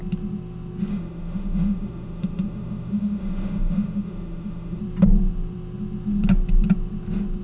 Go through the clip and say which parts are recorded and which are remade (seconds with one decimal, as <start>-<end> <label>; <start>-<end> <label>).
0.0-0.9 recorded; 0.9-4.8 remade; 4.8-7.4 recorded